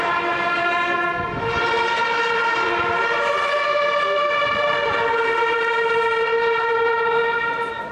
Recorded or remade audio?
recorded